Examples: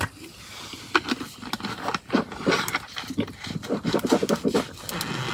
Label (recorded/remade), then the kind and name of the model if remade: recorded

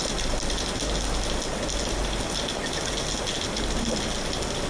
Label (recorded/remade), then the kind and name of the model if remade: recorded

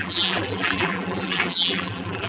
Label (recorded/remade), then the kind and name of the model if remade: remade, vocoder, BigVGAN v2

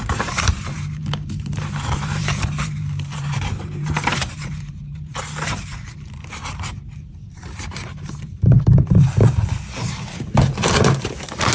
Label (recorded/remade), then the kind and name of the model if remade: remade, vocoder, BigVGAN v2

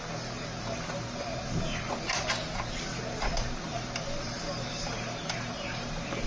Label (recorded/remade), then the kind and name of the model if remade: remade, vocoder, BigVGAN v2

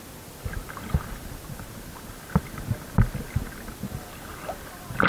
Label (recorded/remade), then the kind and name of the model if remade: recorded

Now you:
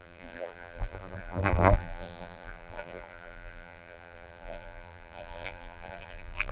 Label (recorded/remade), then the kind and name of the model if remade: remade, vocoder, BigVGAN v2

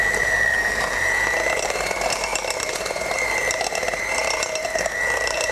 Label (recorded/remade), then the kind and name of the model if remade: remade, vocoder, BigVGAN v2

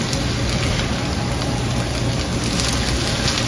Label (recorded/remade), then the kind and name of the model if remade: recorded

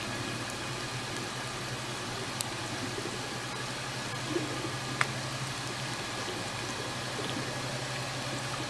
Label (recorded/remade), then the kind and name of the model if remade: recorded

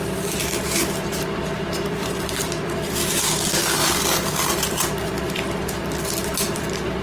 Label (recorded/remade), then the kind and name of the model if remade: remade, vocoder, BigVGAN v2